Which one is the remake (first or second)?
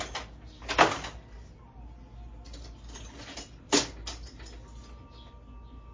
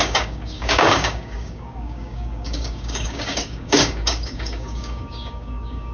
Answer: second